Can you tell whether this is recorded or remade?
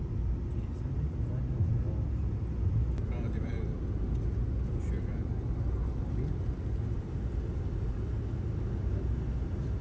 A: recorded